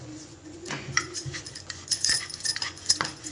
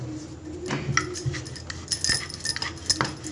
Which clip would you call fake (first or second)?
first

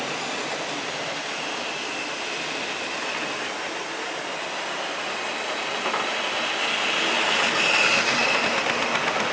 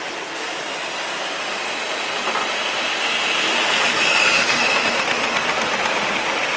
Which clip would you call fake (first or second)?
second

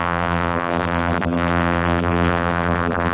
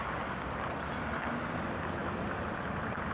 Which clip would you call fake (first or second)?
first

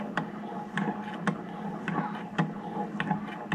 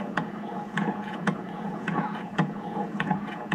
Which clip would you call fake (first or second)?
second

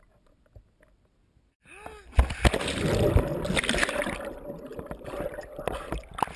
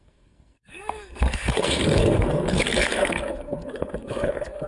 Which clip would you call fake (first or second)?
second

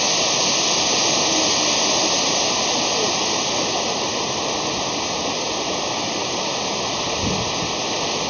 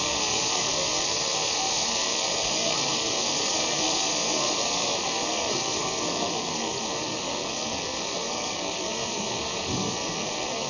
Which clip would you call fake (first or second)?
second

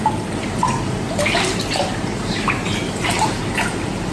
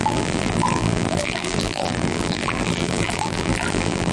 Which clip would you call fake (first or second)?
second